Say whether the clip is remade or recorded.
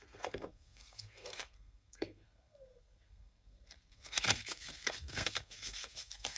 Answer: remade